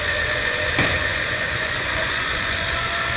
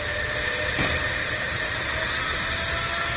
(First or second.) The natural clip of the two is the second